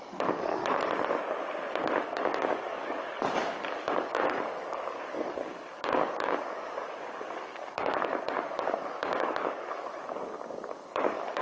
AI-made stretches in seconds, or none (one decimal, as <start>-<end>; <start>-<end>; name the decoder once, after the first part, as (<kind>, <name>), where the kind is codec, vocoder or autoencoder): 0.0-0.6 (codec, DAC); 1.7-11.4